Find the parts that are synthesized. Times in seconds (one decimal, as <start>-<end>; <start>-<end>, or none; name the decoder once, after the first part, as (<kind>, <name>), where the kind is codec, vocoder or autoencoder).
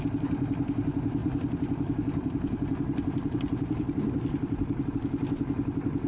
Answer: 1.2-4.9 (vocoder, BigVGAN v2)